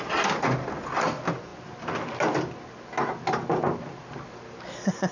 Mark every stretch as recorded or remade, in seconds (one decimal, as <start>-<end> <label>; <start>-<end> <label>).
0.0-5.1 recorded